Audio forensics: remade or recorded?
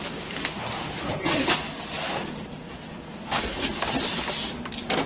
recorded